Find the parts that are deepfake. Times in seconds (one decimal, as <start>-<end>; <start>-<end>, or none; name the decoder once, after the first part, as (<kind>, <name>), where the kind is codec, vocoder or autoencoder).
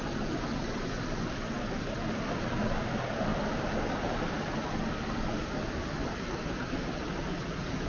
0.0-0.6 (vocoder, BigVGAN v2); 3.3-4.5; 6.0-6.7